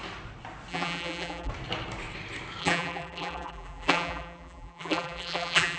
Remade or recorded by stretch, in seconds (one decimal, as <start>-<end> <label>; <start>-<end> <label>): 0.0-0.7 recorded; 0.7-1.5 remade; 1.5-2.6 recorded; 2.6-5.8 remade